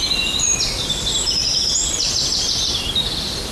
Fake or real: real